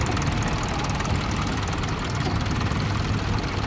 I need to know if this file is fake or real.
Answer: real